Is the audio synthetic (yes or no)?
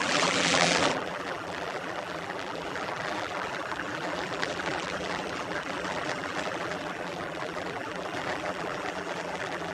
yes